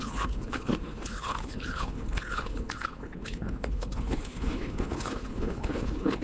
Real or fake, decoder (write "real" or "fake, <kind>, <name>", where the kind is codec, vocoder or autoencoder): fake, codec, HILCodec